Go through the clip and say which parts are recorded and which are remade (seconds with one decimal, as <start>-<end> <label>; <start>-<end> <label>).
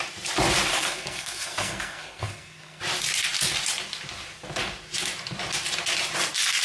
0.0-0.7 recorded; 0.7-2.8 remade; 2.8-6.6 recorded